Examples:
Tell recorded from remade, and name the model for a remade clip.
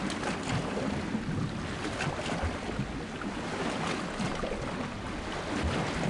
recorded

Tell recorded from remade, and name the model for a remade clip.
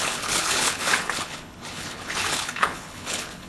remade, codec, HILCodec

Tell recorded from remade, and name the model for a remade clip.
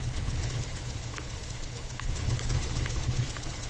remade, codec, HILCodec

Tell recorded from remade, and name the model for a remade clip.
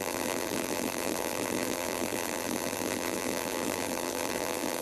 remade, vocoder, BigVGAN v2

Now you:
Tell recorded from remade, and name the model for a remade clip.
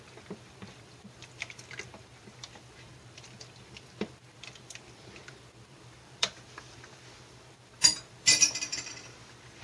remade, vocoder, BigVGAN v2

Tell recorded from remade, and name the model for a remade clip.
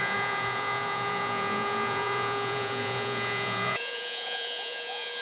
remade, vocoder, Vocos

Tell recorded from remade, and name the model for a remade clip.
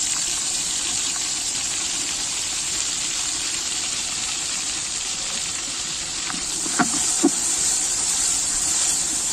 remade, vocoder, BigVGAN v2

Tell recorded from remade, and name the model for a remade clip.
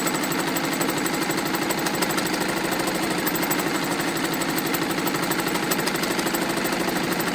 recorded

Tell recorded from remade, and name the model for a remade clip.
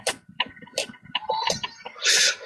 remade, vocoder, BigVGAN v2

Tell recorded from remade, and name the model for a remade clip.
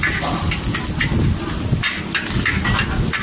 recorded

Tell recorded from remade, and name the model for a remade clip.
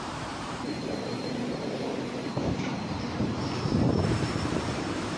remade, vocoder, BigVGAN v2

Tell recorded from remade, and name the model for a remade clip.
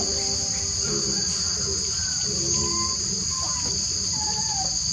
recorded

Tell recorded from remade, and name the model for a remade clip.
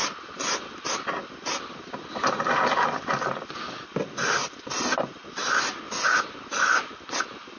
recorded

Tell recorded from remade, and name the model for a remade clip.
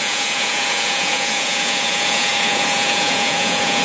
remade, vocoder, Vocos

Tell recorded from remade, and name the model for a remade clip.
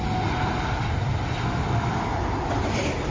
recorded